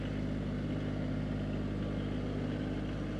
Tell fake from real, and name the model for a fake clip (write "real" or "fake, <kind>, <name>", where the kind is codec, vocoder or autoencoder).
real